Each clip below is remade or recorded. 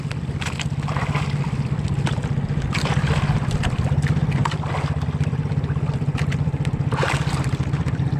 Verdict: recorded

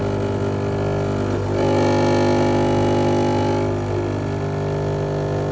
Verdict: recorded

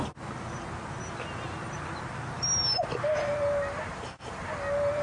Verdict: recorded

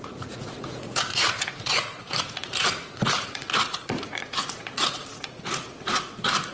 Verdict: remade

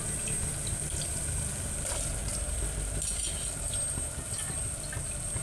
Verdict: recorded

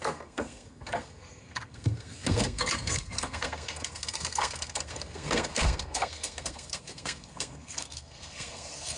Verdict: remade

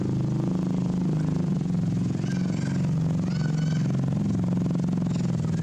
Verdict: recorded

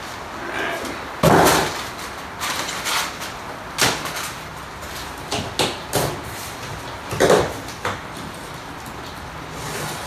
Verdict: recorded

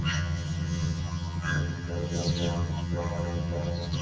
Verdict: remade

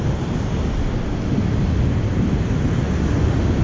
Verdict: recorded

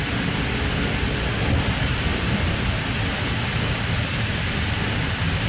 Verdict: recorded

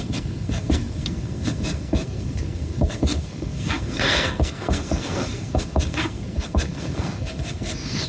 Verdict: remade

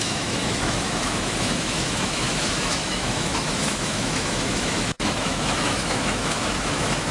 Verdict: remade